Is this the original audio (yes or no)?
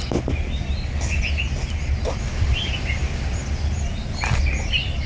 yes